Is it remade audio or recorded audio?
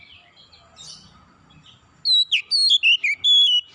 recorded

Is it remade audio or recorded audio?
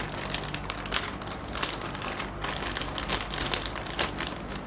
recorded